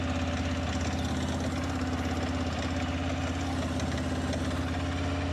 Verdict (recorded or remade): recorded